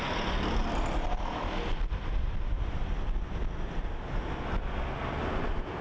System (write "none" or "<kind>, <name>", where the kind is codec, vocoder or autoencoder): none